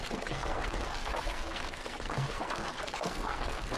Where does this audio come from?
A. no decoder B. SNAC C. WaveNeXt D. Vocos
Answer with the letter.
B